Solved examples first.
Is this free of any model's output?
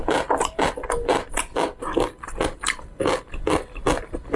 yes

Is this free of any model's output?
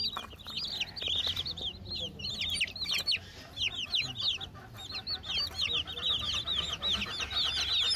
yes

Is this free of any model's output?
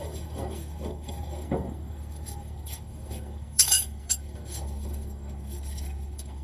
no